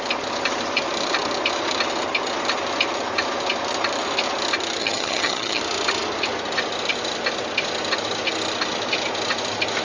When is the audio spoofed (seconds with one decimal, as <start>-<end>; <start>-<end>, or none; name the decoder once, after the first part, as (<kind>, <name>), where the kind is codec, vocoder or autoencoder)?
4.8-5.6 (vocoder, HiFi-GAN)